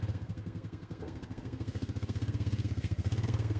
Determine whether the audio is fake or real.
fake